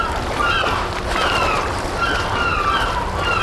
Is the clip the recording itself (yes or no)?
yes